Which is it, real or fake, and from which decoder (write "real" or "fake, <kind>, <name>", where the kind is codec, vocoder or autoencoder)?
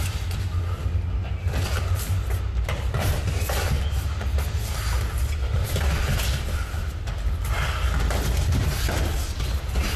real